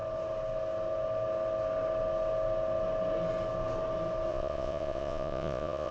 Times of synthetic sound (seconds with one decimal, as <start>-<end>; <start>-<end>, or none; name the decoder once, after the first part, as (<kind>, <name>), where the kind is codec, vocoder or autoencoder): 4.3-5.9 (vocoder, Vocos)